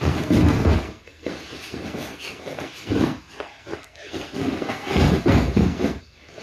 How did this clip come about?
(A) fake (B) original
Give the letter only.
A